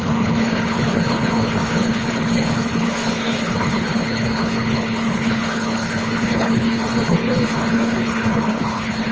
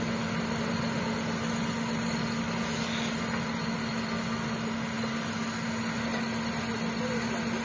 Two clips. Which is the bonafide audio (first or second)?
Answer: second